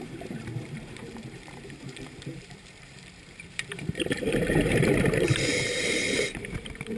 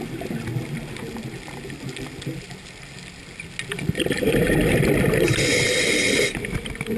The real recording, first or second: second